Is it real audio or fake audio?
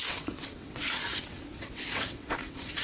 fake